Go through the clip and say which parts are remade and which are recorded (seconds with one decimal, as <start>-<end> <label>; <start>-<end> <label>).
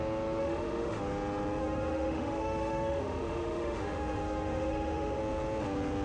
0.0-0.4 recorded; 0.4-1.0 remade; 1.0-1.6 recorded; 1.6-5.2 remade; 5.2-6.0 recorded